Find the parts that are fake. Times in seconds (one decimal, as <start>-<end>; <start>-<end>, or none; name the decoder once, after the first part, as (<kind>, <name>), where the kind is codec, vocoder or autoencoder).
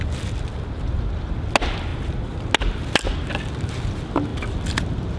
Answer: none